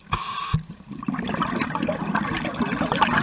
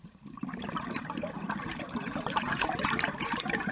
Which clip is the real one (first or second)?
first